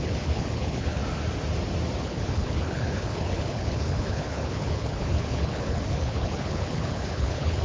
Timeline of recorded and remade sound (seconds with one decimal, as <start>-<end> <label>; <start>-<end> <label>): 0.0-1.0 remade; 1.0-2.0 recorded; 2.0-7.6 remade

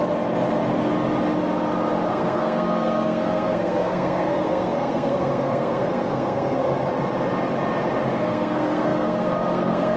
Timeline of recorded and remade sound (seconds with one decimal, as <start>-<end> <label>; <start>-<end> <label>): 0.0-2.1 recorded; 2.1-6.6 remade; 6.6-8.1 recorded; 8.1-10.0 remade